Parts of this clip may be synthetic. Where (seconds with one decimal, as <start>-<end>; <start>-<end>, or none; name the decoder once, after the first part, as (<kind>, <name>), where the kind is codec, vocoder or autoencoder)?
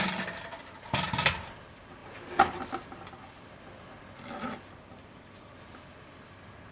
none